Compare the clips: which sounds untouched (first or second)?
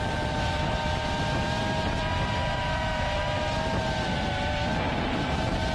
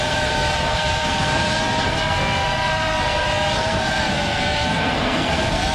first